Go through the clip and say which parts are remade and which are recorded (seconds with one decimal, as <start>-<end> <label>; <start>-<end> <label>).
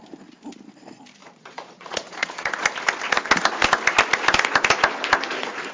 0.0-1.2 recorded; 1.2-2.5 remade; 2.5-5.7 recorded